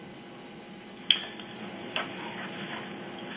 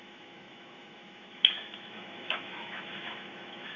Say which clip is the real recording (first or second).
first